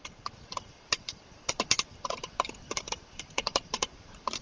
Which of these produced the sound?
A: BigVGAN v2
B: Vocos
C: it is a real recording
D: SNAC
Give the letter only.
A